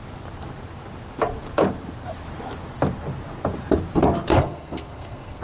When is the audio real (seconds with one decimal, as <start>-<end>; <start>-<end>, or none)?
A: 0.0-4.3